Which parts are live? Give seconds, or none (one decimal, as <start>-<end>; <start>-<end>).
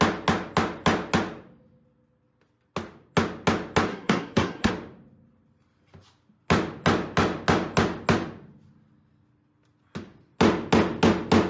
0.0-3.9; 4.7-11.5